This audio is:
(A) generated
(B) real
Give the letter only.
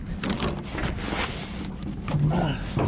B